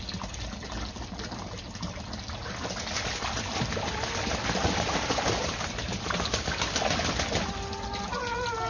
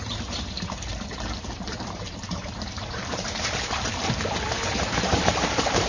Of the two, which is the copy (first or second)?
second